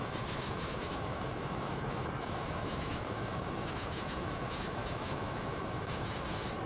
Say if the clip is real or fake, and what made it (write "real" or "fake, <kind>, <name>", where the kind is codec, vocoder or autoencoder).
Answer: fake, autoencoder, DAC-VAE